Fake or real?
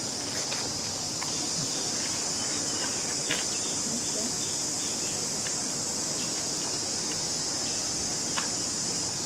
real